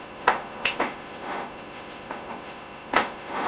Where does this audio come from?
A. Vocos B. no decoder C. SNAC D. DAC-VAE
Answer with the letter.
D